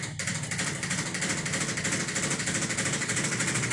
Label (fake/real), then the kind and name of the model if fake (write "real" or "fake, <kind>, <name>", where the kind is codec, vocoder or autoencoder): real